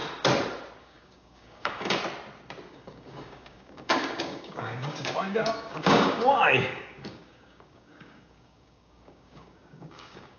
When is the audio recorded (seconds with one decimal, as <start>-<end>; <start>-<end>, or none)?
0.0-0.8; 2.0-2.7